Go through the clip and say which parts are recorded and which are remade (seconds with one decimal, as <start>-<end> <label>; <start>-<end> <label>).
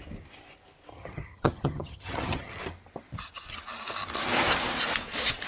0.0-0.9 recorded; 0.9-2.6 remade; 2.6-5.5 recorded